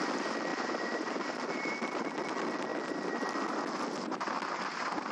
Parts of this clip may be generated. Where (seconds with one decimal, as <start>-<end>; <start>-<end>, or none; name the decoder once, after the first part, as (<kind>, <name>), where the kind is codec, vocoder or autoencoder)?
0.0-2.7 (vocoder, BigVGAN v2)